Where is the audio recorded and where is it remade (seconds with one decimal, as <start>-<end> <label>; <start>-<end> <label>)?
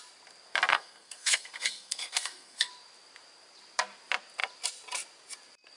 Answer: 0.0-0.7 recorded; 0.7-2.7 remade; 2.7-5.8 recorded